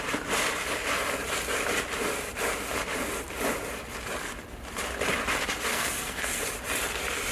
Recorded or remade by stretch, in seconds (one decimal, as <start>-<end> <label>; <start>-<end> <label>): 0.0-5.7 recorded; 5.7-6.4 remade; 6.4-7.3 recorded